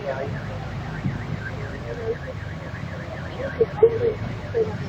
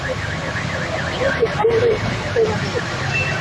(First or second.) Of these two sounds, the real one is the second